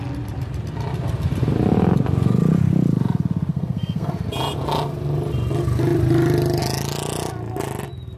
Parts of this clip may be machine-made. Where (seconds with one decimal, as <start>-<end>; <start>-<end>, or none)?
3.5-4.1